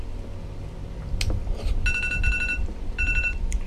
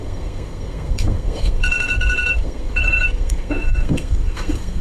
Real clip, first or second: first